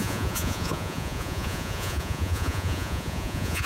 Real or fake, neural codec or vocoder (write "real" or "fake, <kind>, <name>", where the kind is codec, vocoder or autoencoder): fake, vocoder, Vocos